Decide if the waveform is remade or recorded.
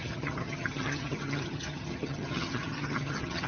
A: remade